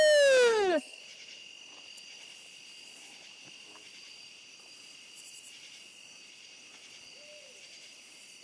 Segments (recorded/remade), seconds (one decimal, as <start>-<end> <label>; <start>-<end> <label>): 0.0-0.5 recorded; 0.5-1.0 remade; 1.0-8.4 recorded